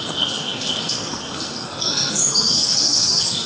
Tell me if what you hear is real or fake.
fake